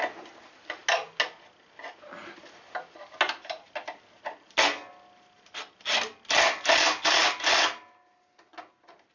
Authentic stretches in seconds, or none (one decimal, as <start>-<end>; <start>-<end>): 0.0-9.1